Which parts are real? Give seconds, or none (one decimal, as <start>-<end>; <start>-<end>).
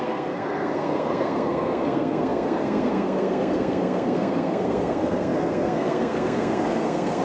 none